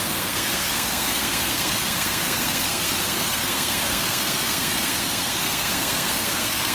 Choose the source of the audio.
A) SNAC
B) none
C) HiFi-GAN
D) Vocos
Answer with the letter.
A